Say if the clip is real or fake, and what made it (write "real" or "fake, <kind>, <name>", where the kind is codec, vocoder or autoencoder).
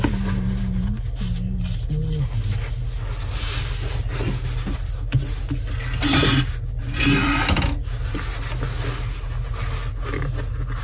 real